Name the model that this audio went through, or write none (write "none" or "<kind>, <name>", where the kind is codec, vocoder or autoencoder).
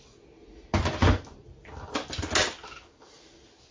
none